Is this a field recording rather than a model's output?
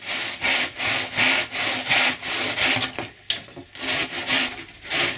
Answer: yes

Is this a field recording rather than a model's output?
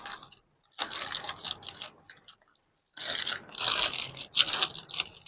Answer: yes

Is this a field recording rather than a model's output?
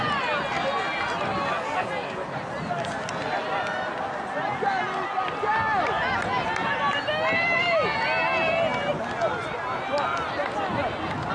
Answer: yes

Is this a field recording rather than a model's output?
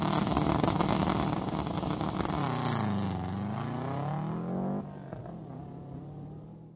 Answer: yes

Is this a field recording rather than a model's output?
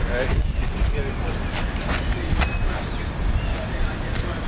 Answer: yes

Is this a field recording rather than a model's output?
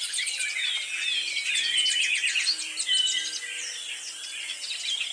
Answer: yes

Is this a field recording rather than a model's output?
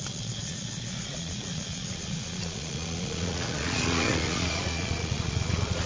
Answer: no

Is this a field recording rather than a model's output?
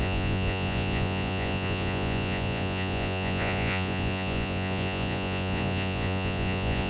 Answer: no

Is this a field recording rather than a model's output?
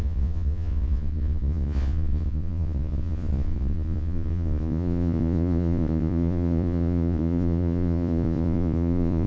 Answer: no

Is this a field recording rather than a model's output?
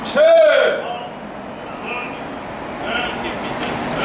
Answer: yes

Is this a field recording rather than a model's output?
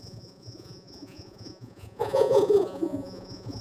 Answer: no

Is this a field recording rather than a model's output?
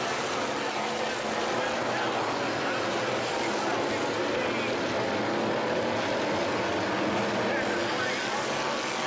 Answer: yes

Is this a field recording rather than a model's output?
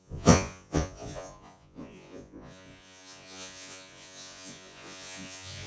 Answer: no